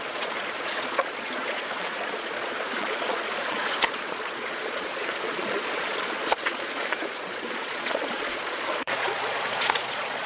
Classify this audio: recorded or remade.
remade